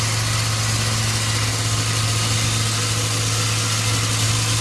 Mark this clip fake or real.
real